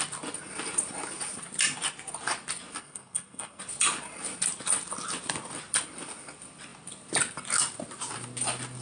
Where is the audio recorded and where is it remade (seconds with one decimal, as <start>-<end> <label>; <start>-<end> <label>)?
0.0-2.8 recorded; 2.8-3.6 remade; 3.6-8.8 recorded